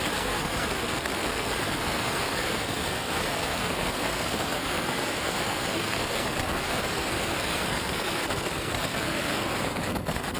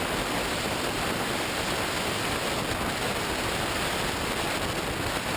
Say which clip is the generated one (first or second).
first